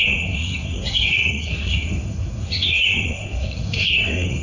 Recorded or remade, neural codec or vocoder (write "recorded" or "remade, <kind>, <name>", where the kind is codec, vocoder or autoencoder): remade, codec, SNAC